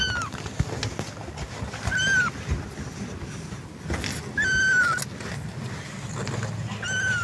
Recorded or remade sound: recorded